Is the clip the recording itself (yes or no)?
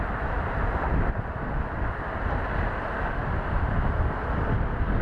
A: yes